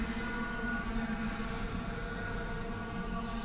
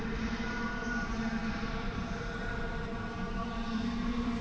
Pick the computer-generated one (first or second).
second